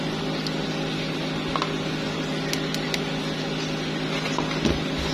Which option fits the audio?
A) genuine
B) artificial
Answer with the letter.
A